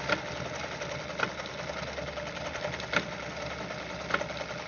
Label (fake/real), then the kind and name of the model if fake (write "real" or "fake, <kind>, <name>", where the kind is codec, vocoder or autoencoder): real